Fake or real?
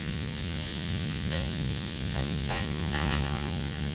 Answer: fake